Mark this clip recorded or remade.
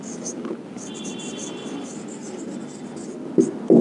recorded